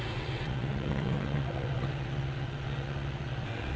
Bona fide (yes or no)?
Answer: no